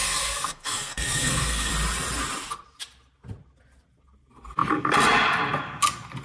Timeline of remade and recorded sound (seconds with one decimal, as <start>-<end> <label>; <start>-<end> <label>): 0.0-1.7 remade; 1.7-6.2 recorded